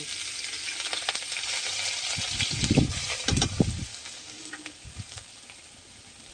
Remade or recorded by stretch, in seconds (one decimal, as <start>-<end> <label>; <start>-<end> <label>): 0.0-3.9 recorded; 3.9-5.3 remade; 5.3-6.3 recorded